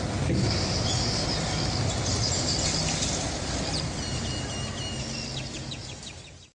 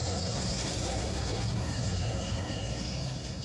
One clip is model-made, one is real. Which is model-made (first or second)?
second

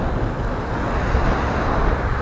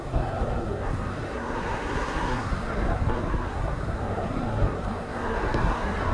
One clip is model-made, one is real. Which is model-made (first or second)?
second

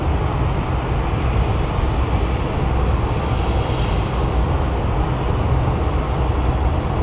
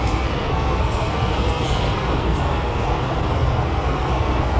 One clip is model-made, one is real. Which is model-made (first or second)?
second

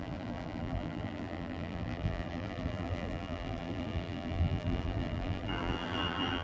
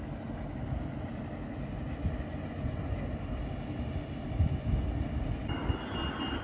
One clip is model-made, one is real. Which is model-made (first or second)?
first